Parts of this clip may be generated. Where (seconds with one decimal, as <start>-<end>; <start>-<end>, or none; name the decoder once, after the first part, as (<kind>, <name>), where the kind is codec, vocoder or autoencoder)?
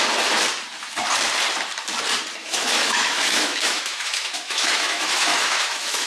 2.4-6.1 (autoencoder, DAC-VAE)